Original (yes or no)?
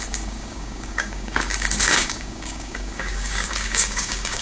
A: no